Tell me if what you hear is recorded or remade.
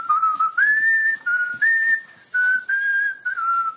recorded